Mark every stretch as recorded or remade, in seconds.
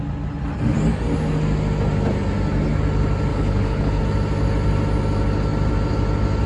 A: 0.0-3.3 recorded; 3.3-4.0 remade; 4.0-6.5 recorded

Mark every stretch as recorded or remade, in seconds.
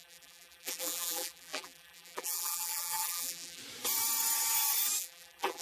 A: 0.0-3.6 remade; 3.6-5.0 recorded; 5.0-5.6 remade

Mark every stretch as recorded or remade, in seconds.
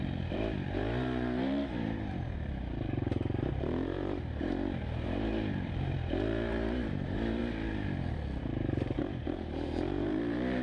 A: 0.0-7.4 remade; 7.4-8.4 recorded; 8.4-10.6 remade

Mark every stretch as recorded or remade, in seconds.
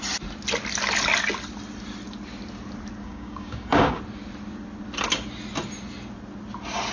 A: 0.0-3.0 recorded; 3.0-4.0 remade; 4.0-6.9 recorded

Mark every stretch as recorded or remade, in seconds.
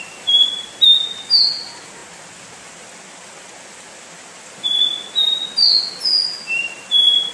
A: 0.0-7.3 recorded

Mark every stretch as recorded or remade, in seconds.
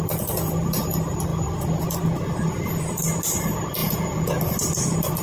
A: 0.0-3.8 recorded; 3.8-4.4 remade; 4.4-5.2 recorded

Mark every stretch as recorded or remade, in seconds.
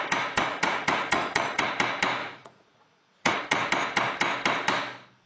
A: 0.0-0.5 recorded; 0.5-1.7 remade; 1.7-2.2 recorded; 2.2-3.7 remade; 3.7-5.3 recorded